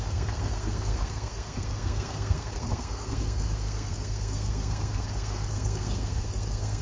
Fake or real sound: fake